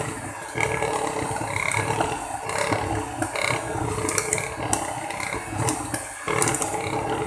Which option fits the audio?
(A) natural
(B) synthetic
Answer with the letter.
A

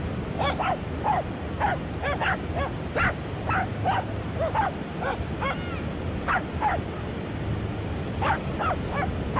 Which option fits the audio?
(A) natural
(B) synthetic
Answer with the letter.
A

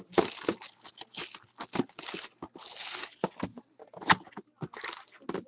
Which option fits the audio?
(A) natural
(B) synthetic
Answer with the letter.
A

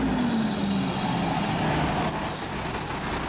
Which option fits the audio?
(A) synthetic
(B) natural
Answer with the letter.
B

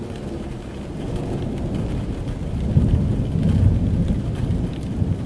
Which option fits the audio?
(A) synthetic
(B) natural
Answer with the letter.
B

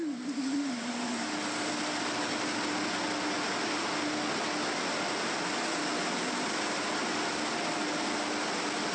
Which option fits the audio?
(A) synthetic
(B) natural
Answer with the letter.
B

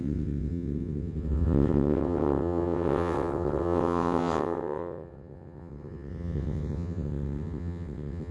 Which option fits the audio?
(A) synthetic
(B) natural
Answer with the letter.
A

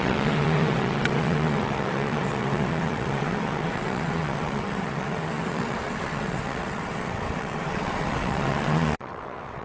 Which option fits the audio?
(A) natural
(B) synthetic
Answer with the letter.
B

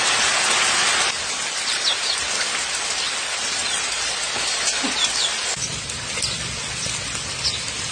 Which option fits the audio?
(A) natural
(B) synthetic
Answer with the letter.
A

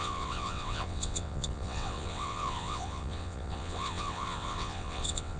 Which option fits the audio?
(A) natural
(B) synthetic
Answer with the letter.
B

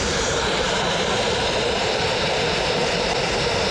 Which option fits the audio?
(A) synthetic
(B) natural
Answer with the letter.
B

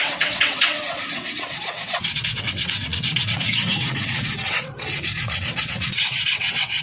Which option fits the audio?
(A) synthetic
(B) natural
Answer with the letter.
A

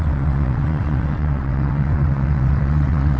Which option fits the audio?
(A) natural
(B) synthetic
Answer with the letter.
B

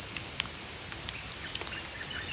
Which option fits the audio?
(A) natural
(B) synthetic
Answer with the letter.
A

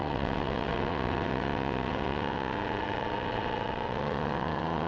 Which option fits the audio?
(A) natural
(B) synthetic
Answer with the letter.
B